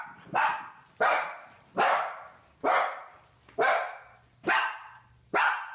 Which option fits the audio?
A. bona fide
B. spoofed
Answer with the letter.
A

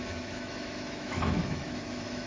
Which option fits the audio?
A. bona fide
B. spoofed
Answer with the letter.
B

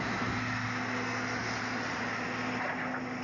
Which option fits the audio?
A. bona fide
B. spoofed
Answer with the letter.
A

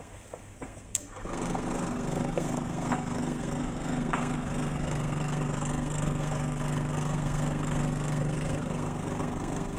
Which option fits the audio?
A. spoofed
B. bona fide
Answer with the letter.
A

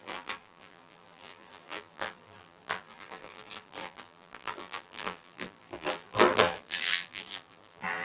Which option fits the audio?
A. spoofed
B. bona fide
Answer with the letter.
A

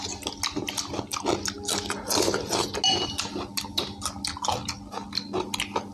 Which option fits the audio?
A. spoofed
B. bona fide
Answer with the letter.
B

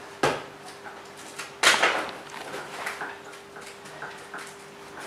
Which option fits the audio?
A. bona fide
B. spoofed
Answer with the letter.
A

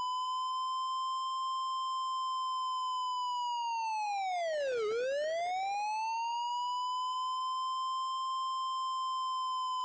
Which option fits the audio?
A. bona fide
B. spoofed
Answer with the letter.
A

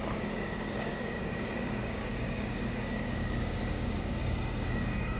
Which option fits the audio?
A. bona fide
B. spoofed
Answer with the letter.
B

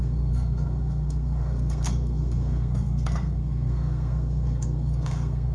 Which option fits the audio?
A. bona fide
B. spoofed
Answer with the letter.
B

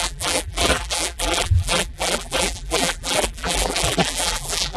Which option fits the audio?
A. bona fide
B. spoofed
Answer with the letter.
B